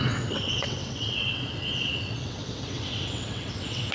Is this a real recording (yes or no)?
no